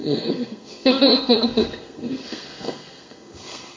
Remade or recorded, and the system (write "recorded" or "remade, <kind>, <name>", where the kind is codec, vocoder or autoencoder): remade, codec, SNAC